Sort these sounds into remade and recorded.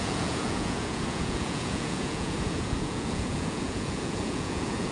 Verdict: remade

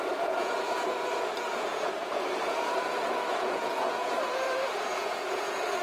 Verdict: remade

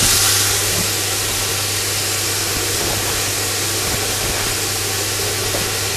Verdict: recorded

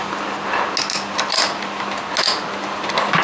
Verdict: recorded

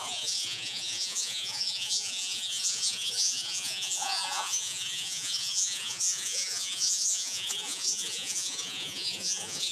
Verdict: remade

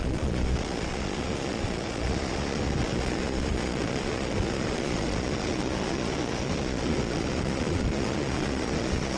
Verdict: remade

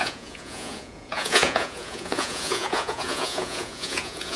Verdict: remade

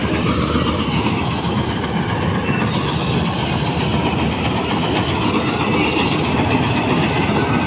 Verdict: recorded